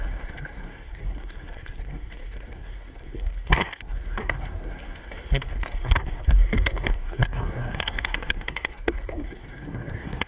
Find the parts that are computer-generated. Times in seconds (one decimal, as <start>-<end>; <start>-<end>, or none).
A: 0.0-10.3